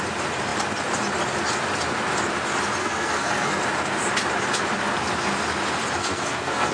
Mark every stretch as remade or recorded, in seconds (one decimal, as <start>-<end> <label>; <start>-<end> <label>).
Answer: 0.0-2.8 recorded; 2.8-3.6 remade; 3.6-6.0 recorded; 6.0-6.7 remade